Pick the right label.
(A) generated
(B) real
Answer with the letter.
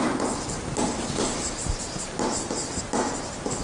B